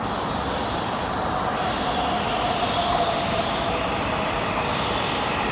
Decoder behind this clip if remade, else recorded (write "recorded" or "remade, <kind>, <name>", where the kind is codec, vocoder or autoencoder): recorded